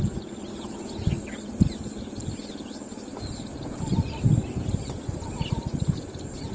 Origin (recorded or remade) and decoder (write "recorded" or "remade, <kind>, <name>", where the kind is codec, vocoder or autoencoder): recorded